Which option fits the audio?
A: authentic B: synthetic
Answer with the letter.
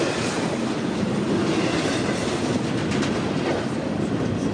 A